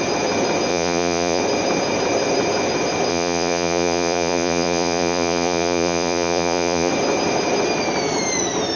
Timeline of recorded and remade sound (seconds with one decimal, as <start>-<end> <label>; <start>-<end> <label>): 0.0-0.7 recorded; 0.7-1.4 remade; 1.4-3.1 recorded; 3.1-6.9 remade; 6.9-8.8 recorded